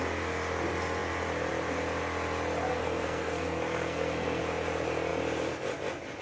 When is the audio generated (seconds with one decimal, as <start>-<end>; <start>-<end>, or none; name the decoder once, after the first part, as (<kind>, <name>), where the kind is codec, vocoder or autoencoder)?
2.7-4.4 (codec, SNAC)

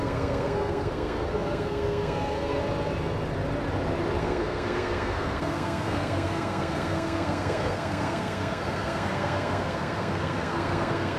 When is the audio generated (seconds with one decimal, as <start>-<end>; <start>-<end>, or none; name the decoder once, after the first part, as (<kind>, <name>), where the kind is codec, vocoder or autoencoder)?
0.0-2.6 (codec, SNAC); 4.2-11.2

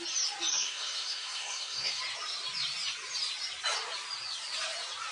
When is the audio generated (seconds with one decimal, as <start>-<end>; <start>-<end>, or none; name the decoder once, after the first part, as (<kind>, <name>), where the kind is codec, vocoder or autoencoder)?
0.5-2.0 (codec, SNAC)

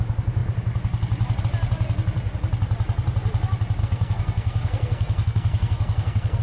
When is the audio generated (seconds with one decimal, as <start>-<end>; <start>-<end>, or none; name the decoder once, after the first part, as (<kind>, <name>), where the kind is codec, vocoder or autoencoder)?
3.8-6.4 (codec, SNAC)

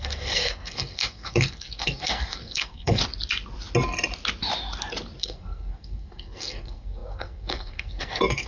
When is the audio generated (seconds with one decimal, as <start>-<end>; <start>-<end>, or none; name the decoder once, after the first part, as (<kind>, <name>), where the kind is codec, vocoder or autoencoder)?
0.0-3.0 (codec, SNAC); 5.2-8.5